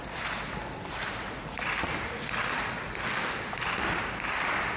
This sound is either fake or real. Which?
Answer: fake